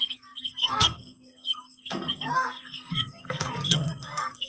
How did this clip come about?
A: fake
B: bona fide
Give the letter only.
A